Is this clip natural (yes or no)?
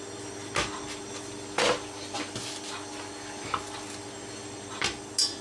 yes